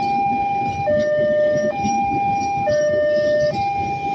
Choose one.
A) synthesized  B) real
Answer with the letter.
B